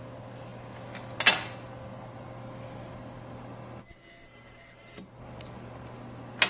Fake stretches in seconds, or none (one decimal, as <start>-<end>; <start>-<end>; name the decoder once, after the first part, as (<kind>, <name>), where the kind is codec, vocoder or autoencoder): none

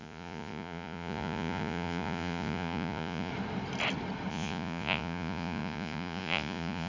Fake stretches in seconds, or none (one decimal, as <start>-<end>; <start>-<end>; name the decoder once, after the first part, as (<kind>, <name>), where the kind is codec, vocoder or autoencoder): 0.0-3.3 (vocoder, Vocos); 4.3-6.9

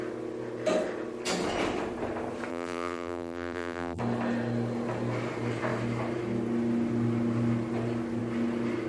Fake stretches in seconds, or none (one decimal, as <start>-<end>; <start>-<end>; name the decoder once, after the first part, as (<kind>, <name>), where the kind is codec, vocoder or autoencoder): 2.5-4.0 (vocoder, BigVGAN v2)

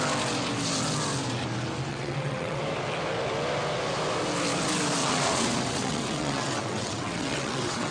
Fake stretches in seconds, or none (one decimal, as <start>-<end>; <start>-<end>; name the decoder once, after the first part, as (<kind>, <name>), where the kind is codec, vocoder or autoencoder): 1.9-2.6 (vocoder, WaveNeXt); 5.0-7.9

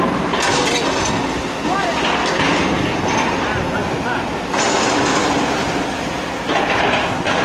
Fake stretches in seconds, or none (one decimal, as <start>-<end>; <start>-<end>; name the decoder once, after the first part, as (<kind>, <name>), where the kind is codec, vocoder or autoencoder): 3.8-6.4 (vocoder, BigVGAN v2)